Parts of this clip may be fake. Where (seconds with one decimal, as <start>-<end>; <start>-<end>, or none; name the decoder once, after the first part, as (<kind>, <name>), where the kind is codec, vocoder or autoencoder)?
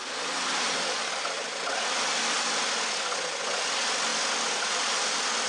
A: none